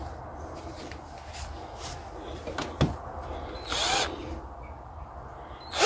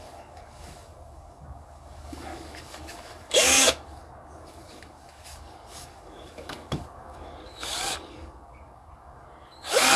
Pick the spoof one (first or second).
second